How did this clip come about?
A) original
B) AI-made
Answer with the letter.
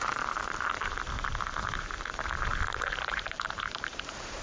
B